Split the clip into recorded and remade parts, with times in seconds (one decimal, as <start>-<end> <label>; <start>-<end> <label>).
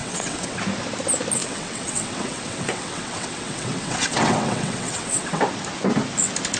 0.0-0.6 remade; 0.6-1.4 recorded; 1.4-5.4 remade; 5.4-6.6 recorded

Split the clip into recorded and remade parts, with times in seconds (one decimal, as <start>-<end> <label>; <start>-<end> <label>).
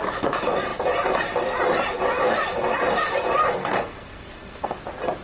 0.0-3.6 recorded; 3.6-4.8 remade; 4.8-5.2 recorded